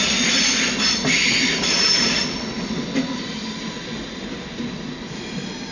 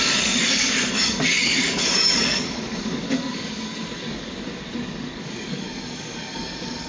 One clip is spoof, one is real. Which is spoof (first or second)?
second